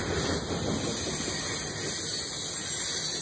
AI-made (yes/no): no